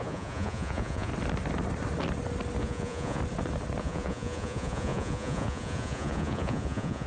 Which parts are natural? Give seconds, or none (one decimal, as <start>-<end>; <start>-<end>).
1.1-2.6; 3.2-3.8